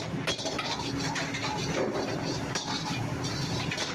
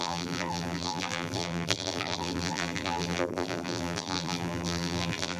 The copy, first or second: second